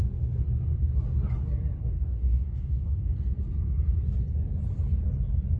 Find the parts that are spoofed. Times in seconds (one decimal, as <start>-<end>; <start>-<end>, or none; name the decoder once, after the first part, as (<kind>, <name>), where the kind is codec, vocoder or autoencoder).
1.8-3.1 (codec, DAC)